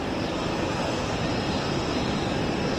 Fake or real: real